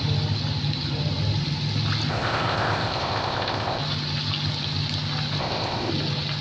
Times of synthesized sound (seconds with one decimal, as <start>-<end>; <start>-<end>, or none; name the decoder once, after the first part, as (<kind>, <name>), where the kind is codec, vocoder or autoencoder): 2.1-3.8 (codec, ZipCodec); 5.4-5.9